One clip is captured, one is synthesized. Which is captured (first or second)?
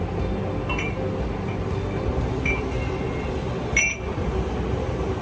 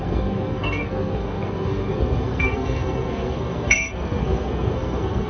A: first